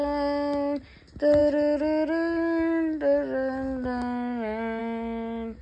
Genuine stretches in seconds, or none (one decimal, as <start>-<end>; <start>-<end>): 0.0-5.6